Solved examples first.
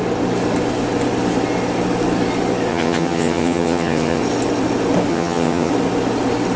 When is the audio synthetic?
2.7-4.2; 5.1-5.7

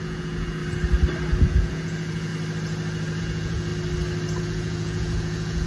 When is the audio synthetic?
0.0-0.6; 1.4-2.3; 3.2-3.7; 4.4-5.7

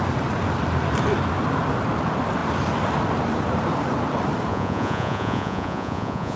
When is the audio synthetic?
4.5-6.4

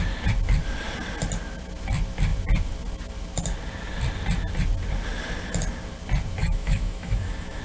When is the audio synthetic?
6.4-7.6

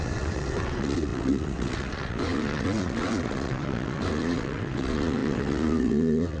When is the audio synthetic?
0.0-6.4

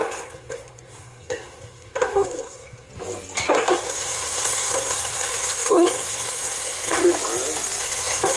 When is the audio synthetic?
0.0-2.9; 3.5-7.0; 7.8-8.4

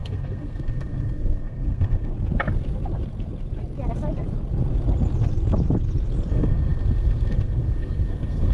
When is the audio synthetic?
0.0-2.1; 6.3-8.5